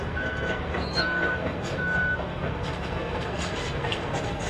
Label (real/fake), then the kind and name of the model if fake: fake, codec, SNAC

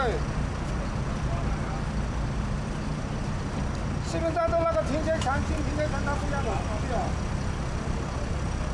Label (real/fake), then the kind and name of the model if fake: real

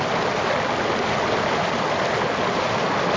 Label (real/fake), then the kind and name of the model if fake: real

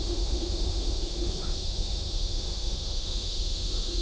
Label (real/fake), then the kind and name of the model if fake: fake, autoencoder, DAC-VAE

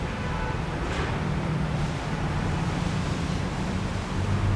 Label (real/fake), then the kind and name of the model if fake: fake, vocoder, BigVGAN v2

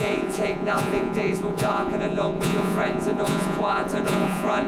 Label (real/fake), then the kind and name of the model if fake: fake, vocoder, Vocos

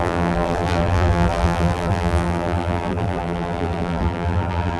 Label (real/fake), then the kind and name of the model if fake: fake, vocoder, BigVGAN v2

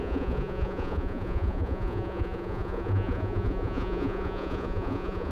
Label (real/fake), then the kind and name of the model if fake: fake, vocoder, Vocos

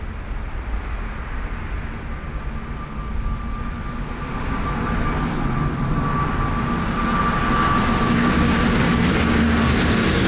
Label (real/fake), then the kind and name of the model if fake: real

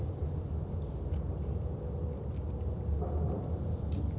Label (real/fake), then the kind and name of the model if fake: real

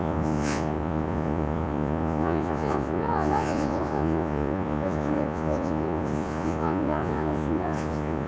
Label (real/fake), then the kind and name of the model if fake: fake, vocoder, Vocos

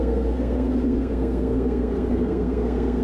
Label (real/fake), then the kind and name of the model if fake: fake, codec, SNAC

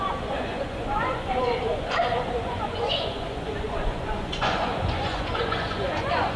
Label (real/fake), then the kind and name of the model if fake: fake, vocoder, Vocos